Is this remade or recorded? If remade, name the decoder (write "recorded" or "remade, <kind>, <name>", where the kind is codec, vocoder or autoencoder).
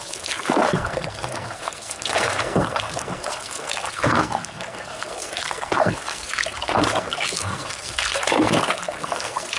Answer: remade, codec, SNAC